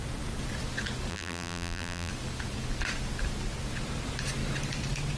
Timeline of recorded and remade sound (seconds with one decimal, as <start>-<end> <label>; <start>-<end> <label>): 0.0-1.1 recorded; 1.1-2.1 remade; 2.1-5.2 recorded